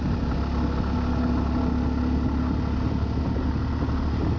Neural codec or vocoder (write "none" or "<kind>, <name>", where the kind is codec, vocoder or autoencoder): none